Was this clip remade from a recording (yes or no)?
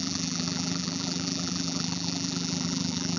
yes